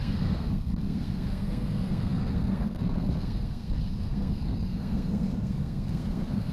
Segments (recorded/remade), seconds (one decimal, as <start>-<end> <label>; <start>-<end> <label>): 0.0-6.5 remade